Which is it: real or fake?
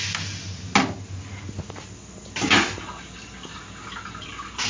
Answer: real